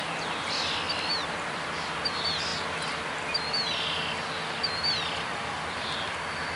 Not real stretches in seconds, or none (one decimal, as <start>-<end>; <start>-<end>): 2.0-2.5; 4.5-6.6